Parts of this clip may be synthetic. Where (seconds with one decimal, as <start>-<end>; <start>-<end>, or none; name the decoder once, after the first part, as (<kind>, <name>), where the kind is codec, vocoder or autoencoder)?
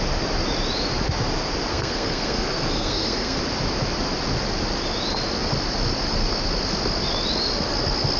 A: 1.7-3.4 (codec, SNAC)